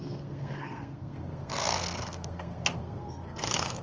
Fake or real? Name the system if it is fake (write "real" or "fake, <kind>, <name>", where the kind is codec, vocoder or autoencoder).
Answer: fake, codec, SNAC